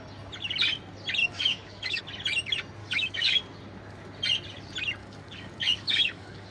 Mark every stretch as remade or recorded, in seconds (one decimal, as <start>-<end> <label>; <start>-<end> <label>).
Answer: 0.0-1.2 recorded; 1.2-2.0 remade; 2.0-2.8 recorded; 2.8-3.4 remade; 3.4-5.0 recorded; 5.0-6.5 remade